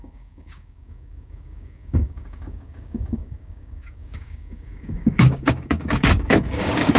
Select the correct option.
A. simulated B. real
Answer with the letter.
A